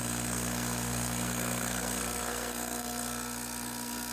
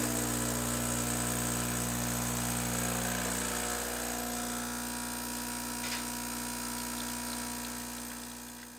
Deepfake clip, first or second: first